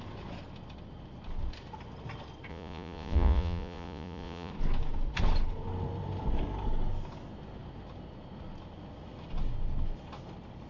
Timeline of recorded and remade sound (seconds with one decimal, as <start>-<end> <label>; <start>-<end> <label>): 0.0-2.5 recorded; 2.5-4.5 remade; 4.5-10.7 recorded